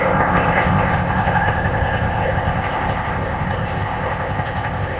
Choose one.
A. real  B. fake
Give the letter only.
B